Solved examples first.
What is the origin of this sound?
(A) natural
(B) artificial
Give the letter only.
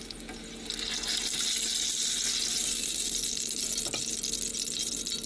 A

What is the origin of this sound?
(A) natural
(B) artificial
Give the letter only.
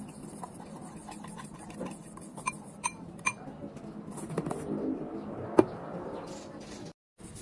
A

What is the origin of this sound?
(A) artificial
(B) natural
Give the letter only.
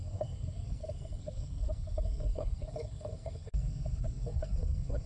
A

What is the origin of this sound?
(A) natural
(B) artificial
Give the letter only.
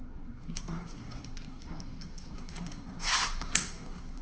B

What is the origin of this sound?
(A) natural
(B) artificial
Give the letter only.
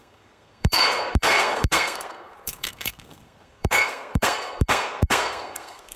B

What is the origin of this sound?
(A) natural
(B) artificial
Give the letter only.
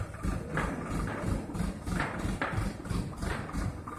A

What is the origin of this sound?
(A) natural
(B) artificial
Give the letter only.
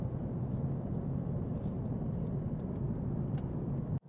A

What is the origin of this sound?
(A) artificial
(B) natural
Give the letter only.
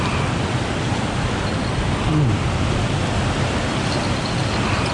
B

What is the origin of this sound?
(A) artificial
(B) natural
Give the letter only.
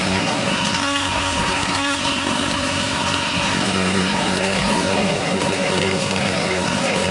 A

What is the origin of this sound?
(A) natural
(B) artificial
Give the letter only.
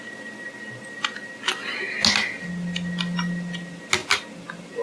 A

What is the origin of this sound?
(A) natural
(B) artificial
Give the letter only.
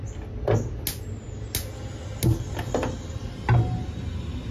A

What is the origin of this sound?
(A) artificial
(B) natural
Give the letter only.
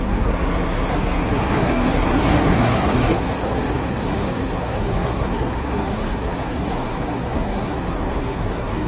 A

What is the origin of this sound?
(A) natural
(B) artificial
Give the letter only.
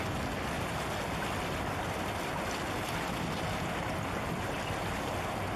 A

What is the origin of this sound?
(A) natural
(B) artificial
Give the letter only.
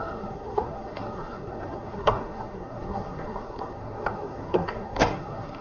B